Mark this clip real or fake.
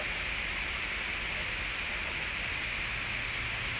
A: real